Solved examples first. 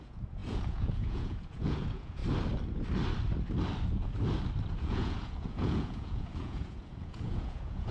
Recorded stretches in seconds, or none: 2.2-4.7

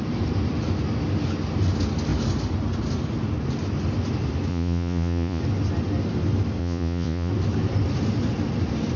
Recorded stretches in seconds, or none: 0.0-4.5; 5.4-6.6; 7.3-9.0

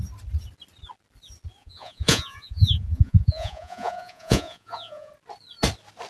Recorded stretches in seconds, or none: 0.0-1.6; 5.1-6.1

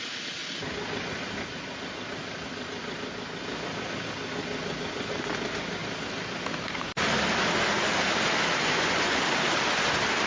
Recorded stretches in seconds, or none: 0.0-8.6; 9.2-10.3

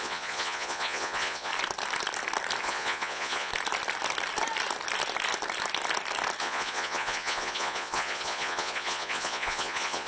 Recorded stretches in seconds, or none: 1.5-2.6; 3.5-6.4